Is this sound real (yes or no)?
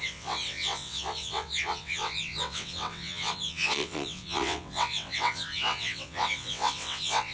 no